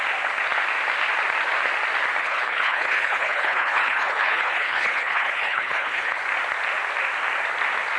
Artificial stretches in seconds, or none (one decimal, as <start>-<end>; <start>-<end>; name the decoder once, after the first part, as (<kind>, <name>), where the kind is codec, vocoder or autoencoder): 2.2-6.2 (codec, HILCodec)